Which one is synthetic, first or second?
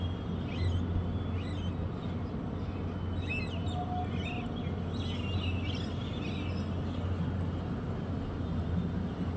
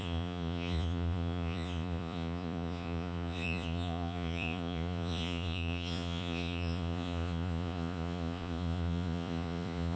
second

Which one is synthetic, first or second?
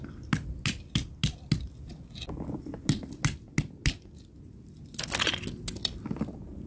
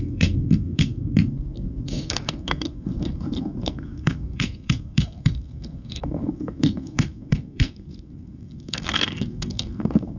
second